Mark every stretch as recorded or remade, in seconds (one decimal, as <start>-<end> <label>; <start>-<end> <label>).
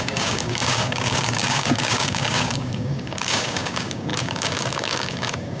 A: 0.0-5.6 remade